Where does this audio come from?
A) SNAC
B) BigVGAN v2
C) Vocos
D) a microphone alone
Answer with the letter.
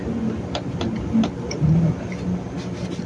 D